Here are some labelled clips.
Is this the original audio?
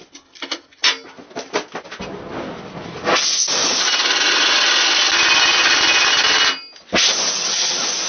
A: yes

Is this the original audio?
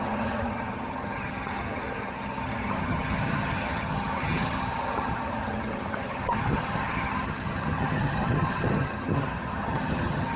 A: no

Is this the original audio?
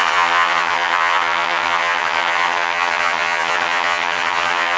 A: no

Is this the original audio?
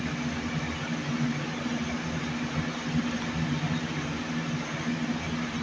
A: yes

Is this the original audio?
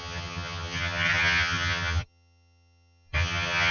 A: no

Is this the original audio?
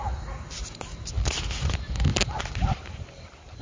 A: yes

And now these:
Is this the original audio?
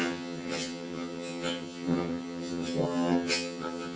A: no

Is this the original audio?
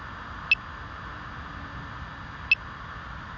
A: yes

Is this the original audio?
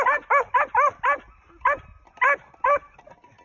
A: yes